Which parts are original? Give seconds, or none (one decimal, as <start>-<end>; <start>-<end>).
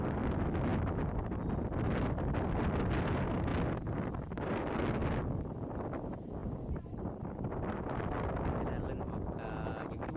0.0-6.4; 7.1-10.2